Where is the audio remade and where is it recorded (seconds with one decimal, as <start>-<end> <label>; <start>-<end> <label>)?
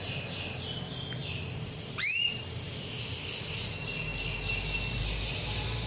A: 0.0-1.2 recorded; 1.2-2.9 remade; 2.9-5.9 recorded